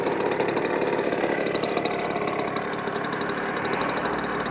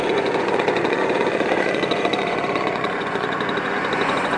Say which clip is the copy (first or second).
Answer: second